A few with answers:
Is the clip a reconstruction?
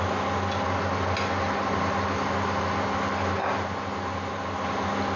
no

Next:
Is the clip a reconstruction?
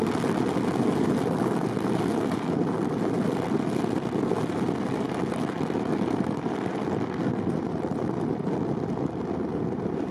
no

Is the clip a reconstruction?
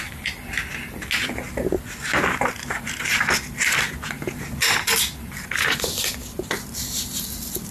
no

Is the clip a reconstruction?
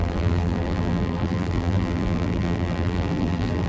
yes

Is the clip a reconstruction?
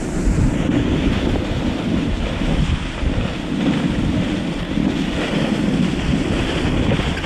no